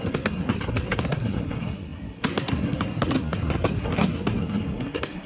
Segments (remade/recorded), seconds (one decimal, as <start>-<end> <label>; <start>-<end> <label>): 0.0-5.3 remade